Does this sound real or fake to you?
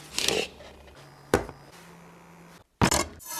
real